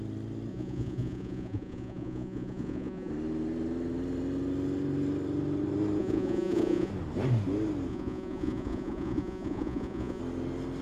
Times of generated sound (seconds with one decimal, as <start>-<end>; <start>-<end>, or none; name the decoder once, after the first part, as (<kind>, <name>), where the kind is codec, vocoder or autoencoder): 0.5-3.1 (vocoder, Vocos); 6.0-6.9; 7.9-10.2